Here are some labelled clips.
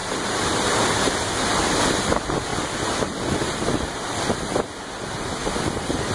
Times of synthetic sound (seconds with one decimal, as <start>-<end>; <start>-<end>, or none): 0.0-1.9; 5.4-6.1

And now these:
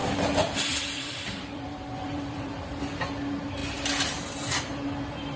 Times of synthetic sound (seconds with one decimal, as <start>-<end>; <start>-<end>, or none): 0.0-2.8

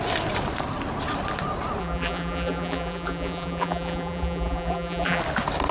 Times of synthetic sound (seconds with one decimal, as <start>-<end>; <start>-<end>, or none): 1.8-5.2

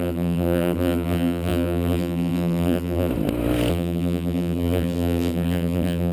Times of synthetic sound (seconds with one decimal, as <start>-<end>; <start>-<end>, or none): 0.0-3.1; 3.7-6.1

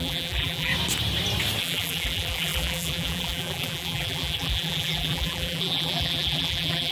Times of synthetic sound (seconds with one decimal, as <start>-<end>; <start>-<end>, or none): 0.0-0.7; 1.6-6.9

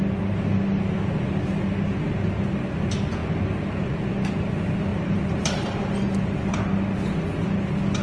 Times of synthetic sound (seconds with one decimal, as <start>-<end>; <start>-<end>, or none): 4.9-6.5

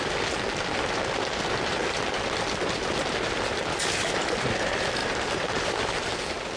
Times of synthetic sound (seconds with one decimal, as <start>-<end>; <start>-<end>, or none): 5.0-5.7

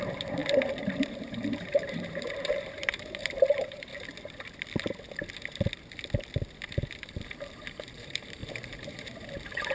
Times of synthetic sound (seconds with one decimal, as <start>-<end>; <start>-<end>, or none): 0.0-0.4; 1.1-3.9; 7.5-9.7